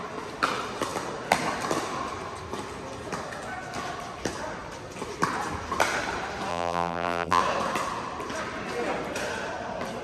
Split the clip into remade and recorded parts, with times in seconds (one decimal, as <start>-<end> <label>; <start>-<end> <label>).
0.0-6.5 recorded; 6.5-7.4 remade; 7.4-10.0 recorded